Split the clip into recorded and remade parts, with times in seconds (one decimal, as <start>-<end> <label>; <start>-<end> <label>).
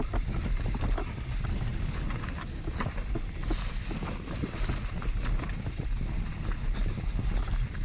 0.0-7.8 recorded